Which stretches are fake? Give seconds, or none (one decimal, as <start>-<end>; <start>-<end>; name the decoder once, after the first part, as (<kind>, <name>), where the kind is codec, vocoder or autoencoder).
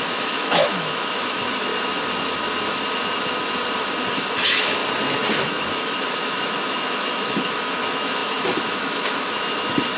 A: 0.0-1.7 (autoencoder, DAC-VAE); 4.1-4.8; 5.3-10.0